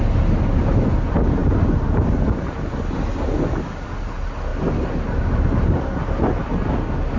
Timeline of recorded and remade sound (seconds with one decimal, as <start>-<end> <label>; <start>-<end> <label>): 0.0-7.2 recorded